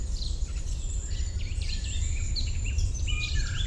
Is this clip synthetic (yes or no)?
no